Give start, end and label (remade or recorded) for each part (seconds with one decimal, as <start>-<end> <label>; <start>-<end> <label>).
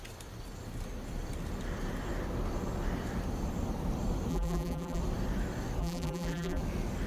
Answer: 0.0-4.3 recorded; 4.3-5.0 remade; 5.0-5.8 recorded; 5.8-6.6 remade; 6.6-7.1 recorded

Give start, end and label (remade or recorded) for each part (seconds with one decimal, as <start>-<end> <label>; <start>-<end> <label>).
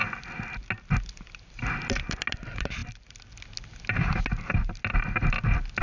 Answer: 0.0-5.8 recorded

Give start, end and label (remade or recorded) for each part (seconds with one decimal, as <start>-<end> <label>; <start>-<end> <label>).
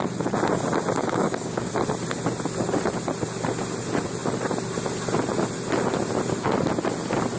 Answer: 0.0-1.0 recorded; 1.0-1.7 remade; 1.7-7.4 recorded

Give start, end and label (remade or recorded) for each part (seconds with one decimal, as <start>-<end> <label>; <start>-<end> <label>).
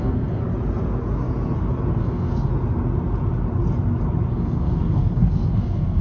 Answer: 0.0-0.4 remade; 0.4-2.0 recorded; 2.0-2.5 remade; 2.5-4.3 recorded; 4.3-6.0 remade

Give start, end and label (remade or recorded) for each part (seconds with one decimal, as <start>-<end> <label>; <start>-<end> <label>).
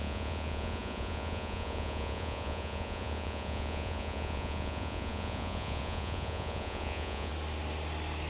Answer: 0.0-7.3 remade; 7.3-8.3 recorded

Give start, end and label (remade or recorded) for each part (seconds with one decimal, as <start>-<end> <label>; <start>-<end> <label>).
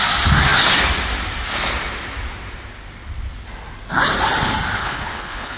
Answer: 0.0-4.8 recorded; 4.8-5.6 remade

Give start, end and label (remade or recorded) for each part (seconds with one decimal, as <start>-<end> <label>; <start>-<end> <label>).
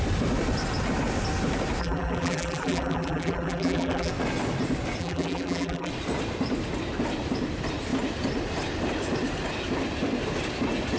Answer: 0.0-1.8 recorded; 1.8-4.1 remade; 4.1-5.0 recorded; 5.0-5.9 remade; 5.9-11.0 recorded